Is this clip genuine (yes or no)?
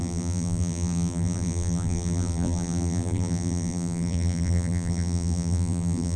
no